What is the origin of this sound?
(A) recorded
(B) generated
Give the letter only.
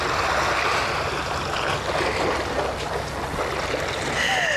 A